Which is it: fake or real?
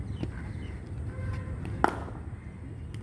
real